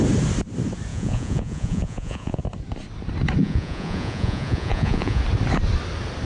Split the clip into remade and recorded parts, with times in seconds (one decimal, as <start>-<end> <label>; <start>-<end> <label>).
0.0-0.9 recorded; 0.9-2.4 remade; 2.4-3.4 recorded; 3.4-5.2 remade; 5.2-6.2 recorded